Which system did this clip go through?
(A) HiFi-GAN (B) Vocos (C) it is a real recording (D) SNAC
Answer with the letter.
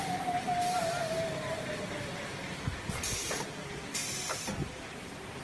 C